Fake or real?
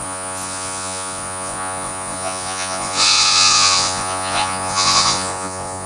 fake